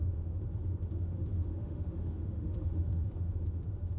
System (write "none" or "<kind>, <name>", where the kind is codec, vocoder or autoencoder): autoencoder, DAC-VAE